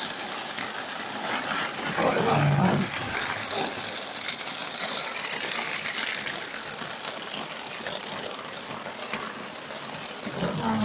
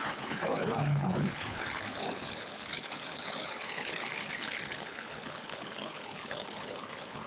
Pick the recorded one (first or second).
first